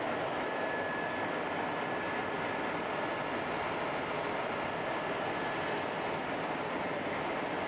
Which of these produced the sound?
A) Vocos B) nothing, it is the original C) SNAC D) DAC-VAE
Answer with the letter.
B